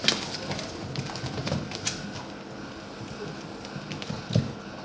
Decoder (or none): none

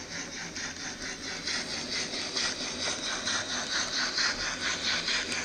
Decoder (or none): none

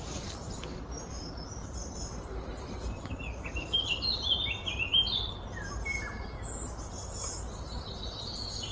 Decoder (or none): none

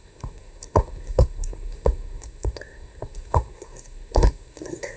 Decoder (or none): codec, SNAC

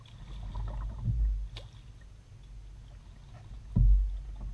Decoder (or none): none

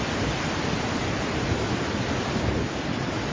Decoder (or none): none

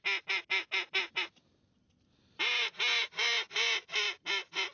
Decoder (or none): none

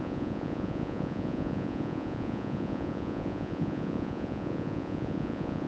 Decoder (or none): vocoder, Vocos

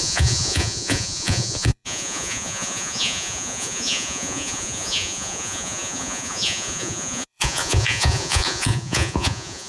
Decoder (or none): vocoder, Vocos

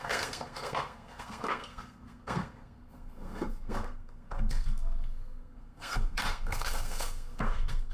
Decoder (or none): codec, SNAC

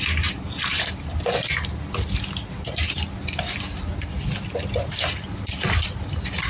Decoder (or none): none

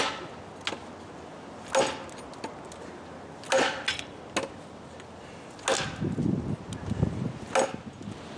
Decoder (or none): none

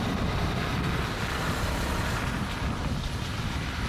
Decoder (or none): none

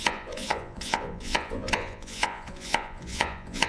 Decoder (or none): vocoder, Vocos